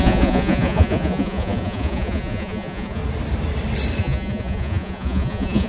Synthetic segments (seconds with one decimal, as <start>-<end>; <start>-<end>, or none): 0.0-3.0; 4.0-5.7